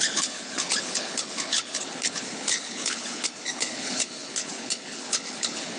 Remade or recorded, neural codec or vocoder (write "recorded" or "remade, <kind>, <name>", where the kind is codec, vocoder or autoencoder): remade, codec, HILCodec